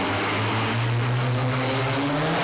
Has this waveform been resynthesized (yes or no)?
no